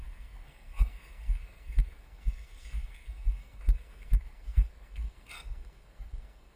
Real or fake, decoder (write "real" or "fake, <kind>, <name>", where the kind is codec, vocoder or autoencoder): fake, codec, SNAC